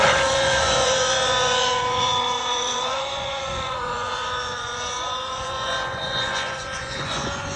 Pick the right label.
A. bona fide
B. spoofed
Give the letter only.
B